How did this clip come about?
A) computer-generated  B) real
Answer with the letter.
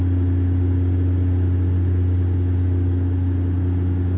B